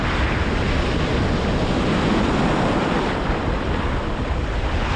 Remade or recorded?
recorded